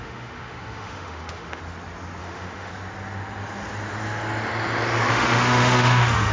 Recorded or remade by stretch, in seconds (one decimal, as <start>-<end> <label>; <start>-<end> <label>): 0.0-1.6 remade; 1.6-2.2 recorded; 2.2-2.7 remade; 2.7-5.1 recorded; 5.1-6.3 remade